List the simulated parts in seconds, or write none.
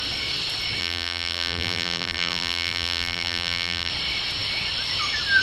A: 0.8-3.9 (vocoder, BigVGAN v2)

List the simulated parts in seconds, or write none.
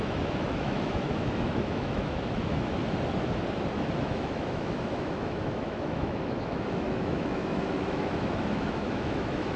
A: 0.0-2.8 (autoencoder, DAC-VAE); 4.0-9.6